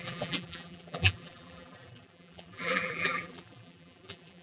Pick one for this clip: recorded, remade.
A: remade